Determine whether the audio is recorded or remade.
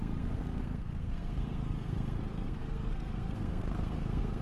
remade